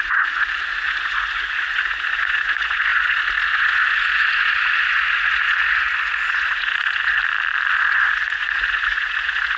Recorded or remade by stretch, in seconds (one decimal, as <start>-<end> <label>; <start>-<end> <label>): 0.0-7.2 remade; 7.2-7.7 recorded; 7.7-9.6 remade